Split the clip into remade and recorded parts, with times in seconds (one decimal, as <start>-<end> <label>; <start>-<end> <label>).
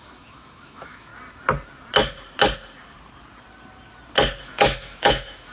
0.0-1.1 remade; 1.1-4.4 recorded; 4.4-5.5 remade